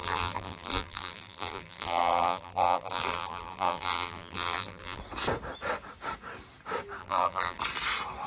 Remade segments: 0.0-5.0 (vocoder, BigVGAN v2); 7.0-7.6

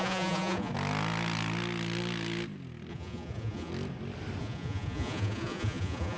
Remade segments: 0.0-0.7 (vocoder, Vocos); 2.9-3.7; 4.4-6.2

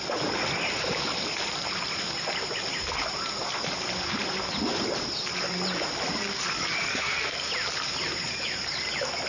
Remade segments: 6.9-7.5 (codec, SNAC)

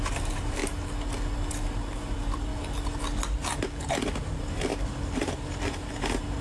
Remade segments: 0.0-0.6 (vocoder, BigVGAN v2); 1.5-2.5; 3.8-6.4

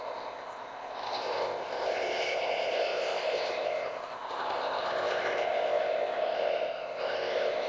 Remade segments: 0.0-7.7 (codec, ZipCodec)

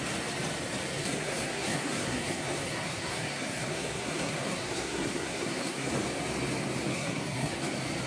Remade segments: 1.0-5.9 (codec, SNAC); 6.9-7.6

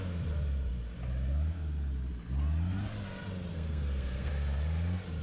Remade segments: 3.5-4.3 (codec, SNAC)

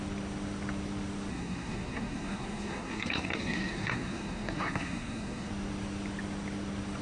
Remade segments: 1.3-5.5 (codec, SNAC)